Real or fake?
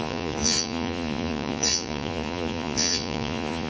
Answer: fake